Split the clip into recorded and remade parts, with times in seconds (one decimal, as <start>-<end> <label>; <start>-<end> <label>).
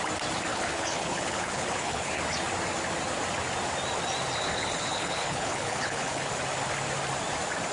0.0-0.5 recorded; 0.5-2.2 remade; 2.2-4.4 recorded; 4.4-6.3 remade; 6.3-7.7 recorded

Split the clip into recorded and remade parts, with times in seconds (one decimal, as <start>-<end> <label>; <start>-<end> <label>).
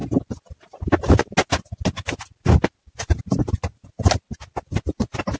0.0-5.4 recorded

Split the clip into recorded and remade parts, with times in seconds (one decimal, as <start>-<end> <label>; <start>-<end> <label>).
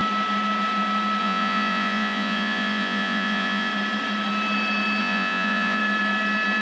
0.0-1.2 recorded; 1.2-3.7 remade; 3.7-5.0 recorded; 5.0-5.8 remade; 5.8-6.6 recorded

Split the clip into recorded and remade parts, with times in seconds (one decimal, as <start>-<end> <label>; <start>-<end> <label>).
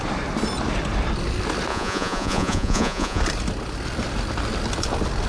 0.0-1.7 recorded; 1.7-3.2 remade; 3.2-5.3 recorded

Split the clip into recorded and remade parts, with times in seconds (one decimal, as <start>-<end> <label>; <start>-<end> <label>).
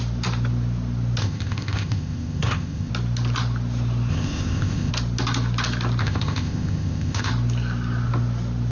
0.0-1.2 recorded; 1.2-2.9 remade; 2.9-4.1 recorded; 4.1-4.9 remade; 4.9-6.0 recorded; 6.0-7.3 remade; 7.3-8.7 recorded